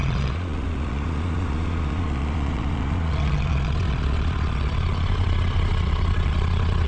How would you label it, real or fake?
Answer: fake